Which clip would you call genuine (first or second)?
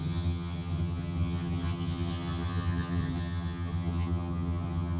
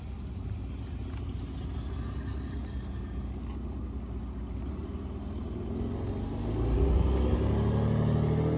second